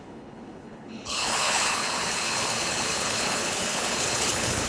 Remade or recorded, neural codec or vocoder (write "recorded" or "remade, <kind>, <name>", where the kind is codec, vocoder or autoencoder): remade, codec, HILCodec